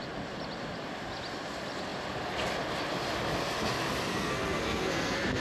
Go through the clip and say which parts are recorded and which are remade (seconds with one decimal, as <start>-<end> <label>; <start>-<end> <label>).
0.0-4.1 recorded; 4.1-5.4 remade